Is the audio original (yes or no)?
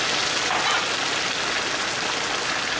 yes